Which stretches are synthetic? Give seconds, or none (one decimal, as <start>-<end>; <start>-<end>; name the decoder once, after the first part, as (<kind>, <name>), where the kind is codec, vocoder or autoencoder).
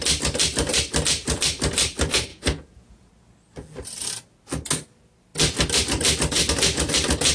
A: 2.3-3.1 (vocoder, Vocos)